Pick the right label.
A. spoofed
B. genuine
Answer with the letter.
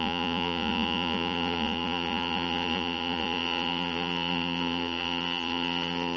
A